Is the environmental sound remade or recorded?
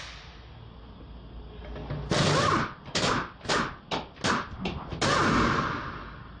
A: recorded